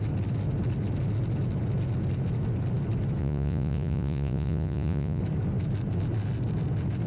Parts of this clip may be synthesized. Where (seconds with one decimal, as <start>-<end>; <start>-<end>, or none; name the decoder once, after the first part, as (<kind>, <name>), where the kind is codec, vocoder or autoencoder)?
3.2-5.2 (vocoder, Vocos)